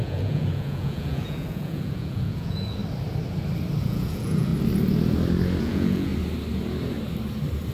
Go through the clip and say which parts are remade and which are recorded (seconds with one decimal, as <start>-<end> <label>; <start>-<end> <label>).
0.0-2.8 remade; 2.8-3.8 recorded; 3.8-4.5 remade; 4.5-5.6 recorded; 5.6-6.1 remade; 6.1-7.7 recorded